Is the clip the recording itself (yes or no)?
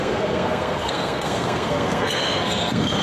no